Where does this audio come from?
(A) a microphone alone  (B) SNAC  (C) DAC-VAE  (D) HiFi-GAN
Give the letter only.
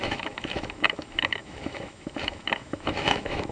C